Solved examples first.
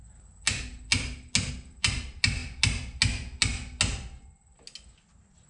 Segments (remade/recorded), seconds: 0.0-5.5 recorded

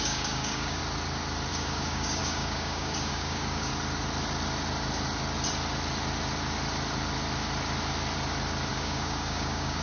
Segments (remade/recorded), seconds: 0.0-0.8 remade; 0.8-1.5 recorded; 1.5-3.7 remade; 3.7-8.7 recorded; 8.7-9.8 remade